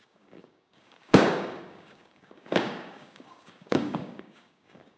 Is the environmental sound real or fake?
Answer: fake